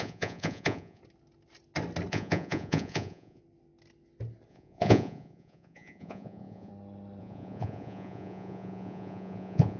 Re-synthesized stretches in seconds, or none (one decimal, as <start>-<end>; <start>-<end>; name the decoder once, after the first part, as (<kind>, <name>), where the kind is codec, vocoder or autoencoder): 0.0-1.0 (vocoder, Vocos); 2.1-3.4; 4.5-6.7; 7.2-9.8